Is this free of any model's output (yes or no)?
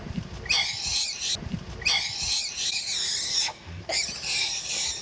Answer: yes